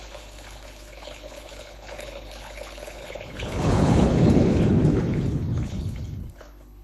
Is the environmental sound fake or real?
fake